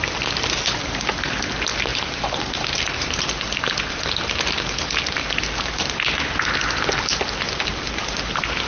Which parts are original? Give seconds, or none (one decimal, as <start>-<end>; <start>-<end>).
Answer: 0.0-8.7